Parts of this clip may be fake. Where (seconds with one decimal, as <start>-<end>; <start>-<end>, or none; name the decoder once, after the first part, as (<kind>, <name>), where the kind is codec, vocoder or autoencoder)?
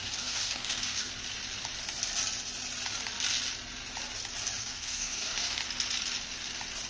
0.0-1.1 (codec, DAC); 4.6-5.6